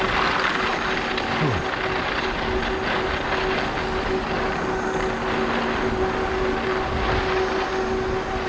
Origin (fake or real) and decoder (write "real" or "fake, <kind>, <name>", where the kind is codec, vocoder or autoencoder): real